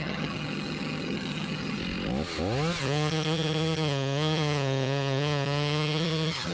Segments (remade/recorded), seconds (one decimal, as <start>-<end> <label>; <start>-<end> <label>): 0.0-1.8 remade; 1.8-2.8 recorded; 2.8-6.5 remade

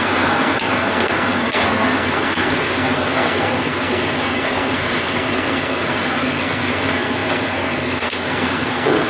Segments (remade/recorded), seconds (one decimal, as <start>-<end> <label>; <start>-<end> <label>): 0.0-9.1 remade

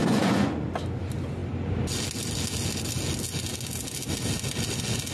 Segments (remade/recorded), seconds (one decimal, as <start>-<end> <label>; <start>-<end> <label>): 0.0-0.7 remade; 0.7-5.1 recorded